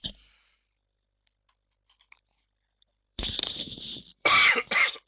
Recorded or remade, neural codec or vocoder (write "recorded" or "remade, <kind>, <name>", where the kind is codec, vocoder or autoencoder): remade, vocoder, BigVGAN v2